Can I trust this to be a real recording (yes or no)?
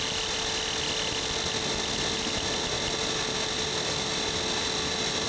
yes